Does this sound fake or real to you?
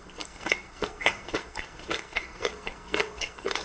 fake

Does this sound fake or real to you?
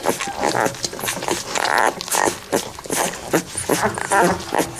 real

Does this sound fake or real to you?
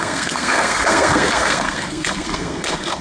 fake